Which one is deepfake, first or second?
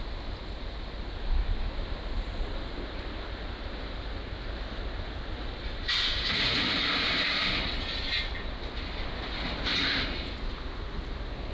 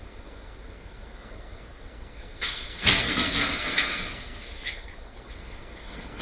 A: second